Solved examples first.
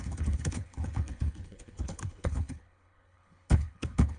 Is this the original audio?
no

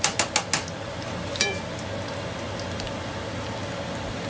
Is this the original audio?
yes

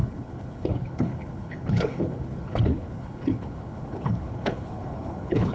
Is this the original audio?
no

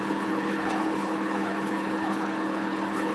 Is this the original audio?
no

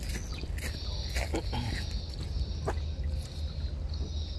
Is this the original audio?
yes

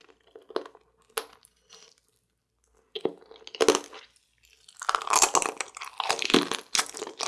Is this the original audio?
yes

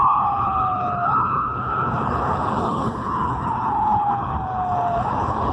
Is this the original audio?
no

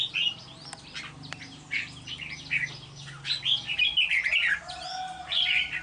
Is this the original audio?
yes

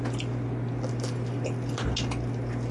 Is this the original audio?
yes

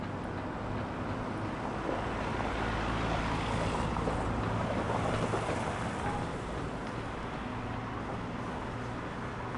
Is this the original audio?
yes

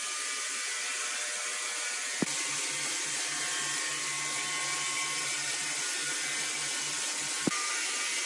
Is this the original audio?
yes